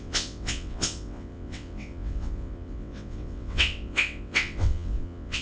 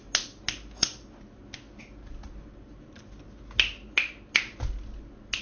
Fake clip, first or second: first